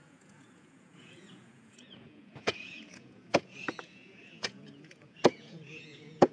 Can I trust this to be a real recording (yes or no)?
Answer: no